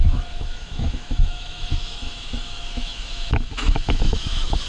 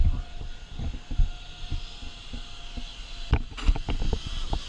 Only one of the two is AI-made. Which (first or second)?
first